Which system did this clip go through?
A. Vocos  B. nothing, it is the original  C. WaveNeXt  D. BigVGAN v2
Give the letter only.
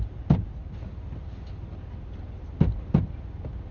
B